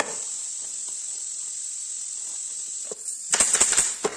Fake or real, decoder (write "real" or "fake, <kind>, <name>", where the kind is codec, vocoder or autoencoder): real